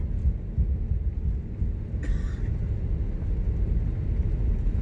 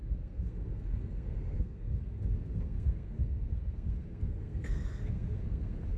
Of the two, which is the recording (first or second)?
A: first